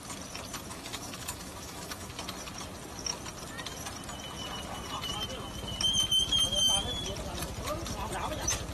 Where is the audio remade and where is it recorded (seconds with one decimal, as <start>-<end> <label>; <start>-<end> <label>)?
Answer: 0.0-0.7 recorded; 0.7-2.1 remade; 2.1-8.7 recorded

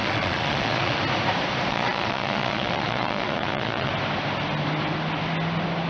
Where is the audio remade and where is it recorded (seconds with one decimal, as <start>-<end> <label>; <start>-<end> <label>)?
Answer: 0.0-1.0 remade; 1.0-1.7 recorded; 1.7-3.9 remade; 3.9-5.9 recorded

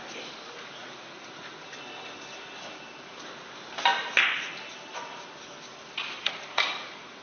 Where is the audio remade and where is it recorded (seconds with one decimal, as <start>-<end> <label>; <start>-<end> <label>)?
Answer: 0.0-0.8 recorded; 0.8-1.8 remade; 1.8-6.2 recorded; 6.2-7.2 remade

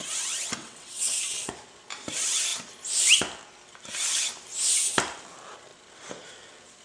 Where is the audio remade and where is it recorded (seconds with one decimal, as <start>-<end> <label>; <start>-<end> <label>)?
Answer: 0.0-0.6 recorded; 0.6-1.5 remade; 1.5-6.8 recorded

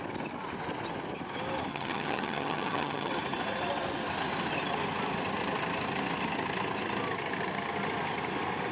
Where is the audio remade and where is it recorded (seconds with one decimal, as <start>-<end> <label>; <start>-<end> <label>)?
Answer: 0.0-1.7 recorded; 1.7-3.1 remade; 3.1-8.7 recorded

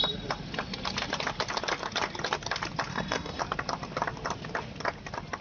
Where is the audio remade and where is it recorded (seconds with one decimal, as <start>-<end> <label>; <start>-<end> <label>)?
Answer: 0.0-2.9 recorded; 2.9-3.4 remade; 3.4-5.4 recorded

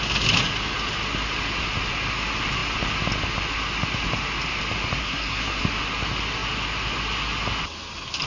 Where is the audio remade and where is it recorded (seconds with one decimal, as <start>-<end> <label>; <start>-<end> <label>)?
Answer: 0.0-5.0 recorded; 5.0-5.6 remade; 5.6-8.3 recorded

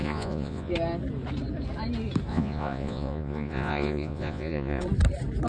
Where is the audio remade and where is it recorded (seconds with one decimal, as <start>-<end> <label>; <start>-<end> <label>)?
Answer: 0.0-0.7 remade; 0.7-2.3 recorded; 2.3-4.8 remade; 4.8-5.5 recorded